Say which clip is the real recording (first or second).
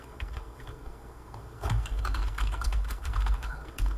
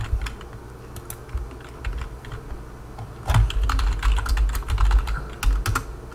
second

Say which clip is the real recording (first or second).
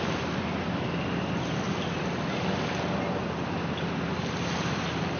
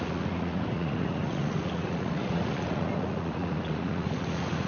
first